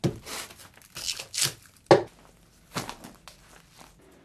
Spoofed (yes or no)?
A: no